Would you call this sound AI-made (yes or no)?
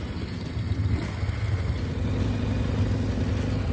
no